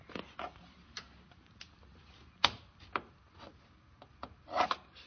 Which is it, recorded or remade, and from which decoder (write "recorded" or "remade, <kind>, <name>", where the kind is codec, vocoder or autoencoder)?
recorded